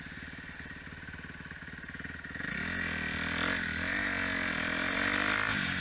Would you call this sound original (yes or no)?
yes